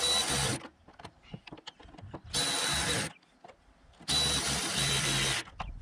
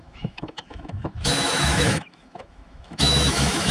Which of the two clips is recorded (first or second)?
first